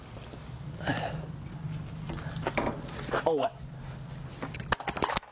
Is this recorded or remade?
recorded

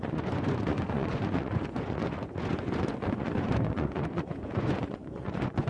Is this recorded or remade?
remade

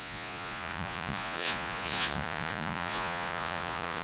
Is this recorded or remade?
remade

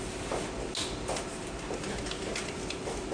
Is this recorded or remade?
recorded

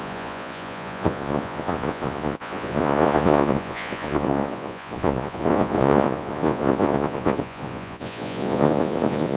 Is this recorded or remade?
remade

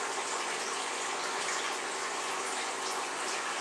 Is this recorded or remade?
remade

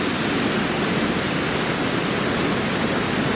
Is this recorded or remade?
recorded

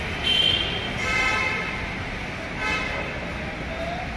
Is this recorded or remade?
recorded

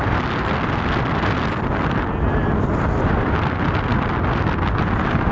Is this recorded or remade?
recorded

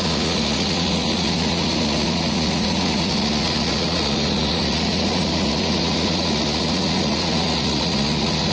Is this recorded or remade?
remade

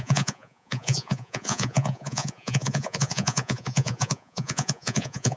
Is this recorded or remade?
remade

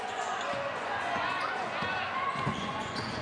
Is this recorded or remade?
remade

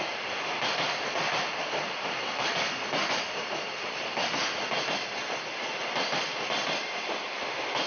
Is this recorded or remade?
recorded